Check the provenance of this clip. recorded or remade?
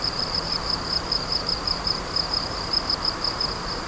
remade